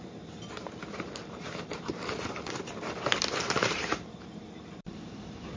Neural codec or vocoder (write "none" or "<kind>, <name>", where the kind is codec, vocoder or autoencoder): vocoder, BigVGAN v2